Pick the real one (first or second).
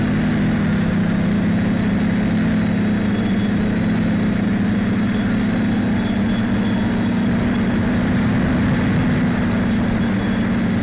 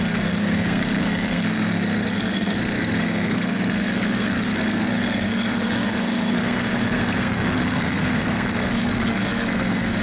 first